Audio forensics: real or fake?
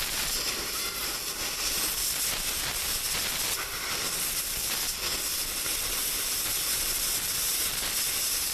real